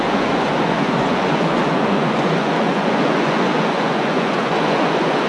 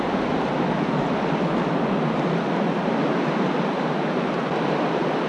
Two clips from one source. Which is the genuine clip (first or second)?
second